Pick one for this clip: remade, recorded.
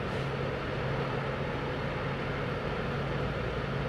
recorded